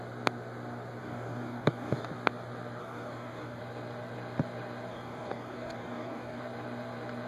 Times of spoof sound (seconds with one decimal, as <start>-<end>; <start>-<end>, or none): 1.0-2.0; 2.8-3.6; 4.9-6.4